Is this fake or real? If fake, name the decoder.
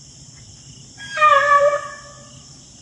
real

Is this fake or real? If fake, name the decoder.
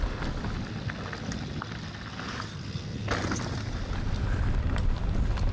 real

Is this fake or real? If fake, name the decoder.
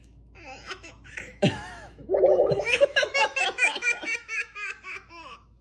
fake, autoencoder, DAC-VAE